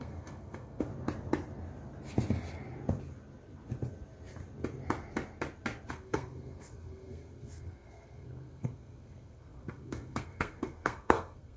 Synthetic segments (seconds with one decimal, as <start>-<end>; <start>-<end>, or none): 0.0-0.9; 5.9-11.6